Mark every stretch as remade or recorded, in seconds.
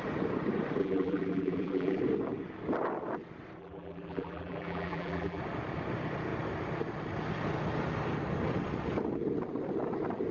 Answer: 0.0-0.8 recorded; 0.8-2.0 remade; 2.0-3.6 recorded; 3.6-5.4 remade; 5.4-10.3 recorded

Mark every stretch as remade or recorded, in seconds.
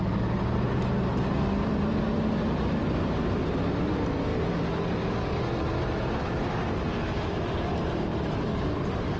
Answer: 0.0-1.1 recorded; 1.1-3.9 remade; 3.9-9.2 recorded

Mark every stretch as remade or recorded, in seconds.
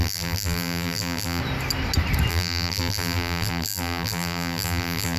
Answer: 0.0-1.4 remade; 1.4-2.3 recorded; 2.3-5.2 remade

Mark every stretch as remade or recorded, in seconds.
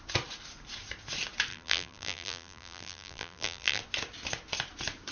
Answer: 0.0-1.5 recorded; 1.5-3.8 remade; 3.8-5.1 recorded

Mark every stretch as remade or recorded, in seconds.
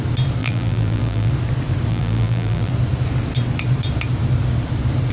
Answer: 0.0-0.4 recorded; 0.4-1.3 remade; 1.3-1.9 recorded; 1.9-2.7 remade; 2.7-5.1 recorded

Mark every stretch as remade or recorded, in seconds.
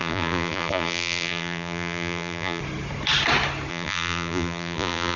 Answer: 0.0-2.6 remade; 2.6-3.7 recorded; 3.7-5.2 remade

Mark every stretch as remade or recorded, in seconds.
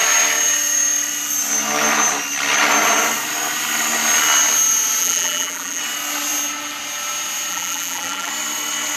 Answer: 0.0-5.0 recorded; 5.0-5.8 remade; 5.8-7.5 recorded; 7.5-8.3 remade; 8.3-9.0 recorded